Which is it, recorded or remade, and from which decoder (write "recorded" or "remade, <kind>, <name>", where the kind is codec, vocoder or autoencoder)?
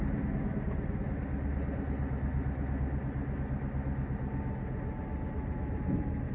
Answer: recorded